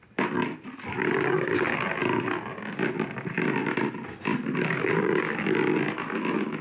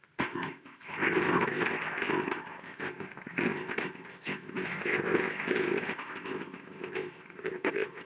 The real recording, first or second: first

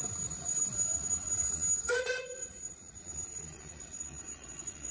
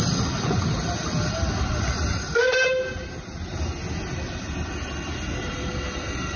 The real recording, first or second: second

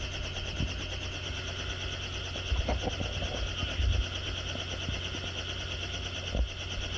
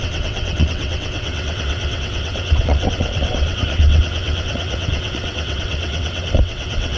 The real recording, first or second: first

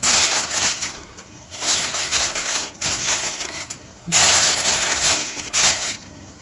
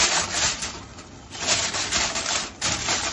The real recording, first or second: second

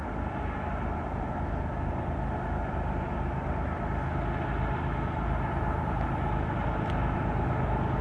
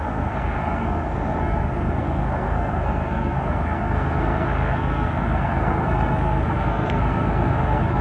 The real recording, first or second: first